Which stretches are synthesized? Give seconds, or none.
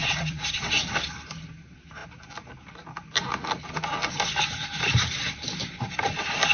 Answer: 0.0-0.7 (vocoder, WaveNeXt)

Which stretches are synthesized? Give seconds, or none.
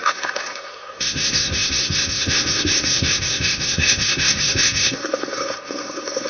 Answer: 0.0-6.3 (codec, SNAC)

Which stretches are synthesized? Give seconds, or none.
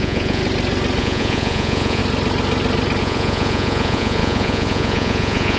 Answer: 0.0-0.4 (vocoder, Vocos); 1.0-2.0; 3.0-5.6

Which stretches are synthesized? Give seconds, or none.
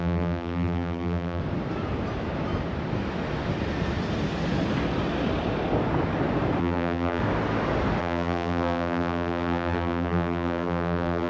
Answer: 0.0-1.4 (vocoder, BigVGAN v2); 6.6-7.2; 8.0-11.3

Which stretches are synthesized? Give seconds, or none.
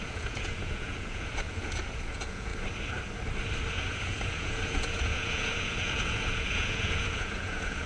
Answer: 0.0-2.5 (vocoder, Vocos); 3.7-7.9